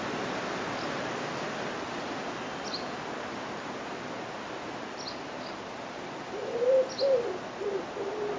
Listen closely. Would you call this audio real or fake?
real